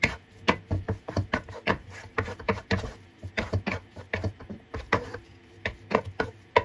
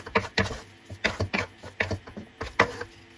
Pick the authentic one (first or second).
second